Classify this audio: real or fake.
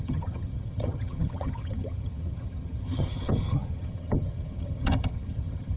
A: fake